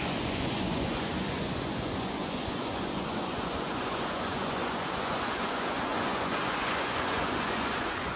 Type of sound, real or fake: fake